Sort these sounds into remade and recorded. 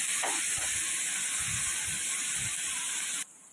recorded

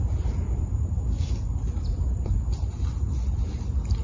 recorded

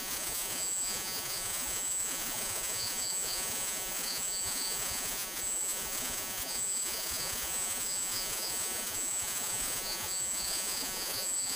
remade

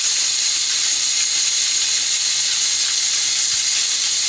recorded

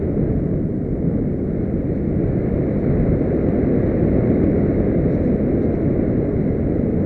recorded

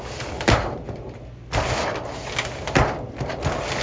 recorded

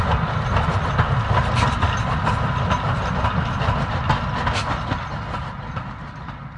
recorded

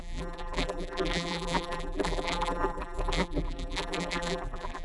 remade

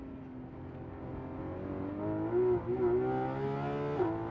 recorded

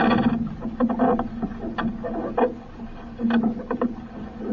recorded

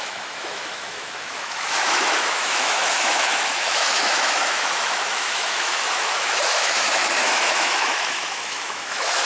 remade